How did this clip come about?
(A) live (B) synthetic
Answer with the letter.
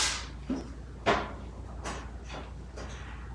A